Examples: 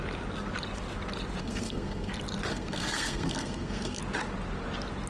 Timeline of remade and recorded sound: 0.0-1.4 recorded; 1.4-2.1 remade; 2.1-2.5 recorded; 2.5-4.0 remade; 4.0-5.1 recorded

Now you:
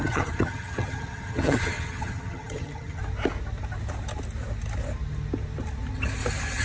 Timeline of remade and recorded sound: 0.0-3.0 remade; 3.0-6.6 recorded

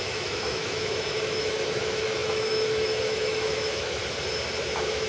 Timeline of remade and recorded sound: 0.0-4.0 remade; 4.0-4.6 recorded; 4.6-5.1 remade

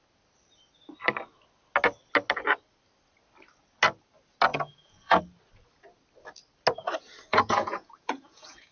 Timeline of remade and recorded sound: 0.0-4.5 recorded; 4.5-5.2 remade; 5.2-7.3 recorded; 7.3-8.7 remade